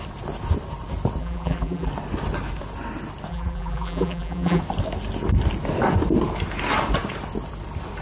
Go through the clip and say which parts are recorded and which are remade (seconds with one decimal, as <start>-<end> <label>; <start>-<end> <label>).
0.0-1.2 recorded; 1.2-1.9 remade; 1.9-3.3 recorded; 3.3-4.6 remade; 4.6-8.0 recorded